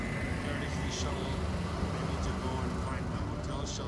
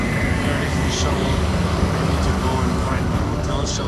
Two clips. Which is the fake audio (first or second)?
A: second